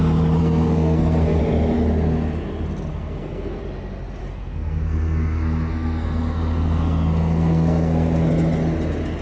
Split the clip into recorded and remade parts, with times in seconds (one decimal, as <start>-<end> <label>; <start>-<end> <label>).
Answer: 0.0-0.4 recorded; 0.4-1.4 remade; 1.4-2.9 recorded; 2.9-3.6 remade; 3.6-4.2 recorded; 4.2-8.3 remade; 8.3-9.2 recorded